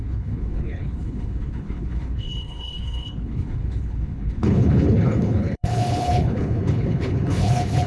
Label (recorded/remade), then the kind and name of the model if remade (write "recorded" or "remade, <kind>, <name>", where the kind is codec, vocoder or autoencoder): remade, codec, HILCodec